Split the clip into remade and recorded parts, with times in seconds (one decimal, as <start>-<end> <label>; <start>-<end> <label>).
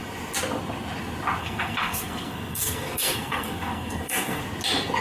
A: 0.0-1.4 recorded; 1.4-4.4 remade; 4.4-5.0 recorded